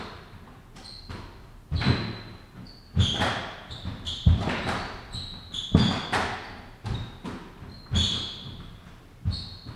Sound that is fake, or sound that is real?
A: real